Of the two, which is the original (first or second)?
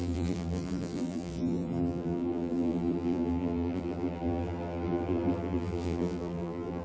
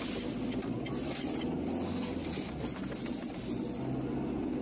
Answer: second